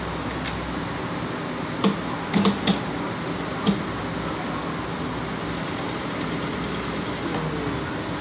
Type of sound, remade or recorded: recorded